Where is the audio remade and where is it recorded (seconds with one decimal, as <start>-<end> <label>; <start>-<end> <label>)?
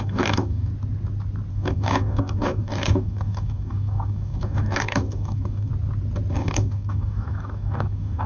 0.0-0.7 remade; 0.7-1.5 recorded; 1.5-5.7 remade; 5.7-6.3 recorded; 6.3-8.3 remade